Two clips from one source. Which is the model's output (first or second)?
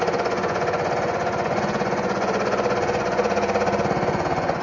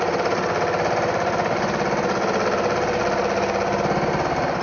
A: first